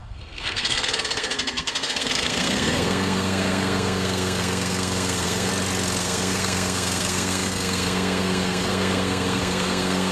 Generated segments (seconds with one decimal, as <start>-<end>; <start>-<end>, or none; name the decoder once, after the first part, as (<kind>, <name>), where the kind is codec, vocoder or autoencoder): 0.0-5.5 (codec, SNAC); 6.0-10.1